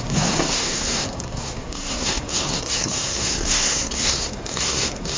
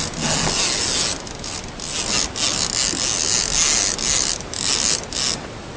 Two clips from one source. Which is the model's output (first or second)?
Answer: first